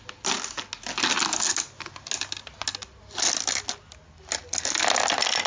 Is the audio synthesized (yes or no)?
no